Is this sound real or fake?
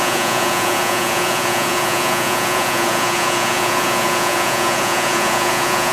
fake